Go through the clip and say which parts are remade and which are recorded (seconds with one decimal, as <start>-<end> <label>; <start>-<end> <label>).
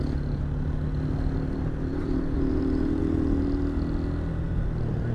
0.0-1.9 recorded; 1.9-3.0 remade; 3.0-5.1 recorded